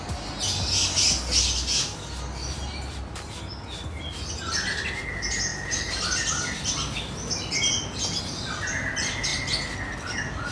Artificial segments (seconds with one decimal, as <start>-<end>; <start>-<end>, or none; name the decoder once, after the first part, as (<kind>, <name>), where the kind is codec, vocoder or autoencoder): none